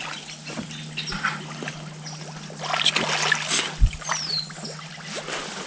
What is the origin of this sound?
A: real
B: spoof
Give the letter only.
A